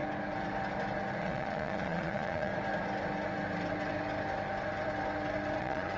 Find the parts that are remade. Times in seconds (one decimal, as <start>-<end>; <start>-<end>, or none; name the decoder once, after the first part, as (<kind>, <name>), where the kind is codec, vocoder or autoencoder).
1.2-2.5 (vocoder, Vocos); 5.6-6.0